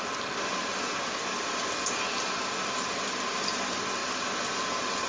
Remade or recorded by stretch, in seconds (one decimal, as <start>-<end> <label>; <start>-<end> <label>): 0.0-5.1 recorded